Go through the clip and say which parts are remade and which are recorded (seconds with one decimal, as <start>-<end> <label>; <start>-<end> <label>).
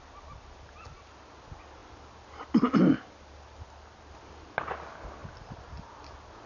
0.0-6.5 recorded